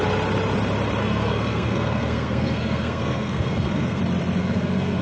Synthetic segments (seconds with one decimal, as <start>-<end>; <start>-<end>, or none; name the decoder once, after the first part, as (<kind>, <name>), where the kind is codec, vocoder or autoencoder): 1.0-4.0 (codec, SNAC); 4.4-5.0